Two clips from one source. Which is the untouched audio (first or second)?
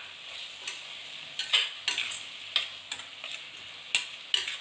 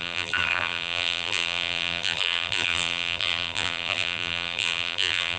first